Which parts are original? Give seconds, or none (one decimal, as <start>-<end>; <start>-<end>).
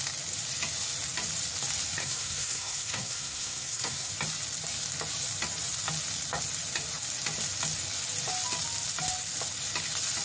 0.0-2.0; 4.1-10.2